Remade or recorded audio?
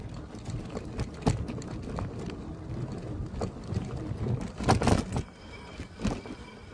recorded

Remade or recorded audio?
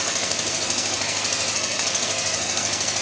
remade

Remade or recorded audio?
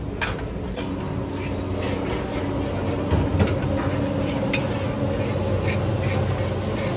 recorded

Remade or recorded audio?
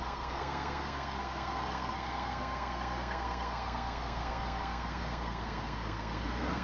remade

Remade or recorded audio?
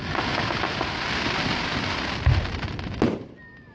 recorded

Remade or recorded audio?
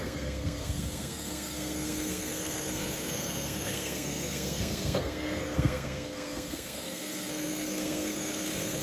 remade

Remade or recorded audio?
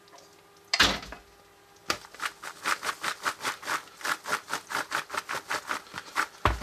recorded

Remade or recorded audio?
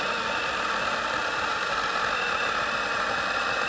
recorded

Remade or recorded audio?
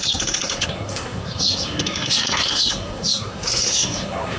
remade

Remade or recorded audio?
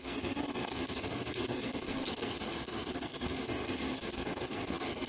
remade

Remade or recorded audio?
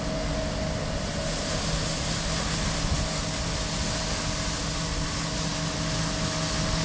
recorded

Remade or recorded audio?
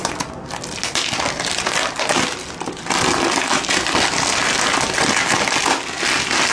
recorded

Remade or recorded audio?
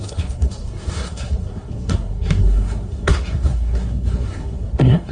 remade